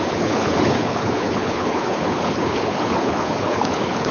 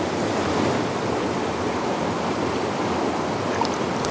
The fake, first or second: first